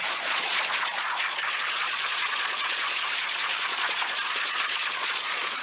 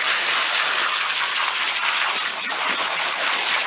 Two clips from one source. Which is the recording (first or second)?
second